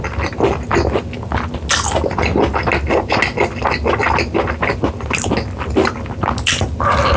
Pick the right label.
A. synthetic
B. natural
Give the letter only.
B